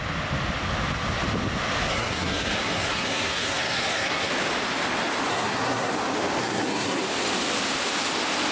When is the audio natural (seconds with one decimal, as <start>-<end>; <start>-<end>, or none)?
0.0-1.9; 4.3-5.3; 5.9-6.4; 7.0-8.5